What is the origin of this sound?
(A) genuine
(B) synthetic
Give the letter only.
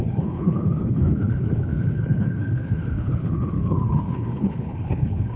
B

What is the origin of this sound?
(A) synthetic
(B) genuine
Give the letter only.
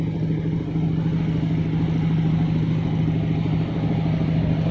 B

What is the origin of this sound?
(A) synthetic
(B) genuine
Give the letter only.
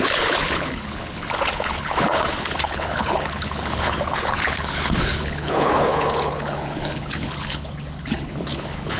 A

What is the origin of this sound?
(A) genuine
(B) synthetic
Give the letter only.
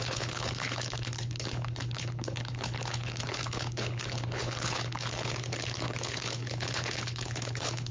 B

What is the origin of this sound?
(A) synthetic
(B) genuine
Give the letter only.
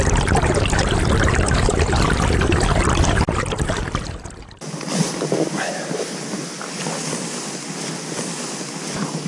B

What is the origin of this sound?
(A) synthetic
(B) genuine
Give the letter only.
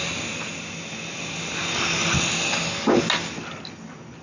B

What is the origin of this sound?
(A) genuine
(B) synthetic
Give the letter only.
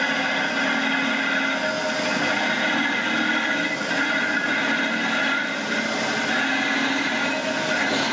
A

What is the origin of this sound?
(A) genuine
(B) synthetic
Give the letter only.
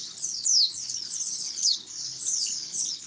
B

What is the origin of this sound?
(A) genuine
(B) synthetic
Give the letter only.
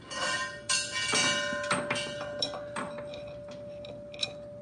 A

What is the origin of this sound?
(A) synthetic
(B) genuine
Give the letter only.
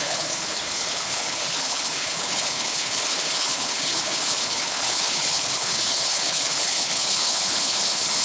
A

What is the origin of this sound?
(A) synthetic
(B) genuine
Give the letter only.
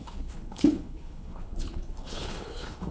A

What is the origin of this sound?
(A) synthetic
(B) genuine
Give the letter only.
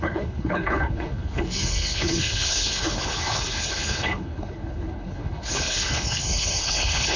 A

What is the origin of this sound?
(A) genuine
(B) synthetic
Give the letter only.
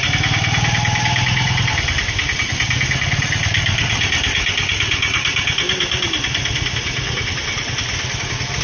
A